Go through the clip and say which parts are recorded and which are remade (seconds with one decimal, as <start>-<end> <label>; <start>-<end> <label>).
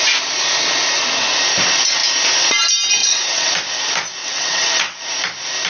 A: 0.0-3.0 recorded; 3.0-3.5 remade; 3.5-4.2 recorded; 4.2-5.0 remade; 5.0-5.7 recorded